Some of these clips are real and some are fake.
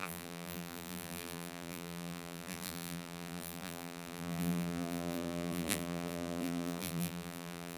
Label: fake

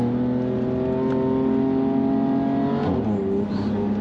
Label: real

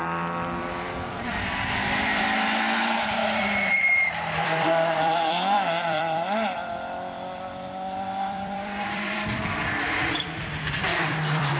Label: fake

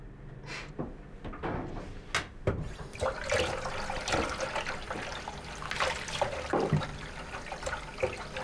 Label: real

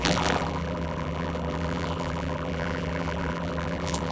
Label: fake